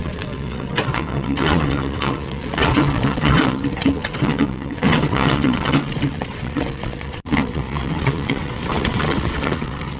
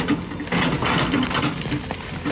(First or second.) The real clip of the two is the second